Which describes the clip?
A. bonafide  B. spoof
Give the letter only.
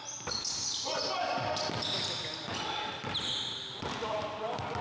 A